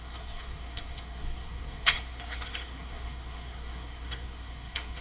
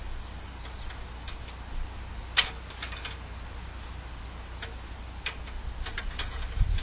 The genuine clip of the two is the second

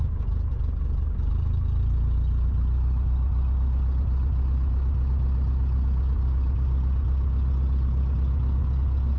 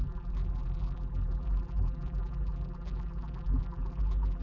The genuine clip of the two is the first